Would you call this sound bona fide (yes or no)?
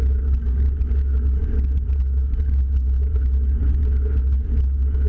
yes